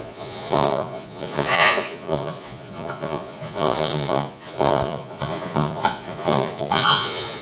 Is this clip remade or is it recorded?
remade